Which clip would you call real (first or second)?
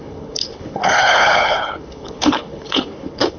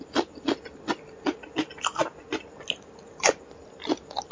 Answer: second